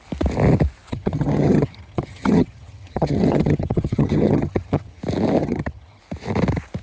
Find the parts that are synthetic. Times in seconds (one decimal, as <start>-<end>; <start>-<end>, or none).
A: 0.9-5.0; 5.4-6.0